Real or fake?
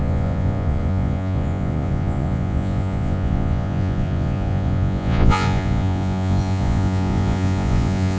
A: fake